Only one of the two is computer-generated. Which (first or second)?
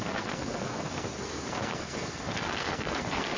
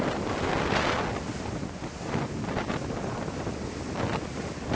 first